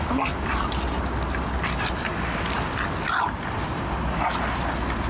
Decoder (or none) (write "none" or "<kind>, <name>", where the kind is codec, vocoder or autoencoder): none